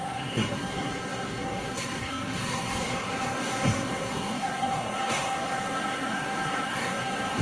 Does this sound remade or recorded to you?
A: remade